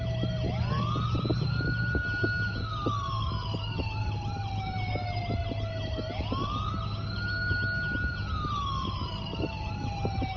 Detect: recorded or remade recorded